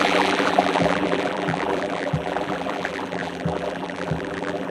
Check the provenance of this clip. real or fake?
fake